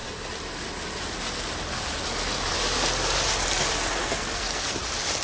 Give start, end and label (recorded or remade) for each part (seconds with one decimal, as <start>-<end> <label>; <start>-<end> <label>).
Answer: 0.0-4.0 recorded; 4.0-4.8 remade; 4.8-5.2 recorded